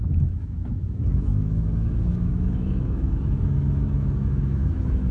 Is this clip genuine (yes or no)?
no